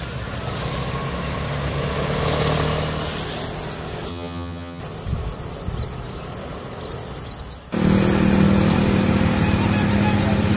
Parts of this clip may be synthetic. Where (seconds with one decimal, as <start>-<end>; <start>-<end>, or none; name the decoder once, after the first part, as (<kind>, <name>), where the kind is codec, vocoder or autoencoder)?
4.1-4.8 (vocoder, HiFi-GAN)